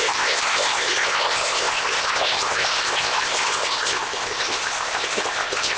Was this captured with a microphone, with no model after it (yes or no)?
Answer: no